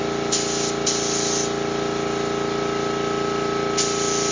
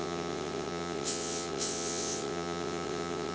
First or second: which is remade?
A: second